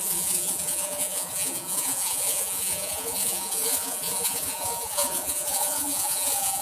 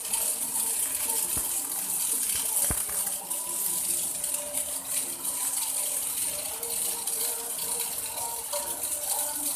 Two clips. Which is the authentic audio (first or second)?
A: second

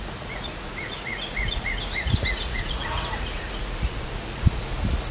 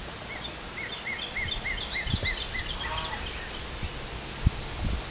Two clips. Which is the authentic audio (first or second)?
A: second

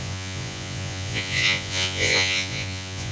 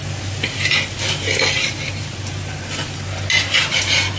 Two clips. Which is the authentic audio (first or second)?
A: second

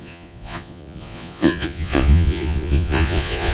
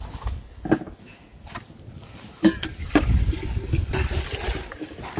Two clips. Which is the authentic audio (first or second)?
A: second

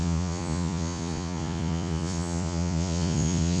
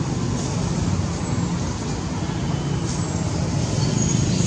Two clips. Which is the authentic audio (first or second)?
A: second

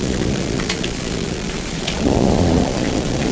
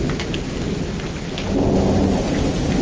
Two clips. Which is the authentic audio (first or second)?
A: second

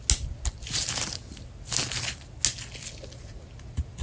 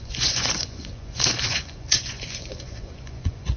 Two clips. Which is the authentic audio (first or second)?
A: first